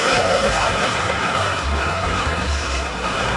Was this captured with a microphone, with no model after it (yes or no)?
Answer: no